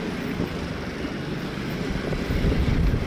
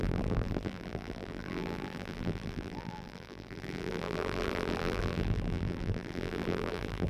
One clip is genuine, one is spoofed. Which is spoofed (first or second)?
second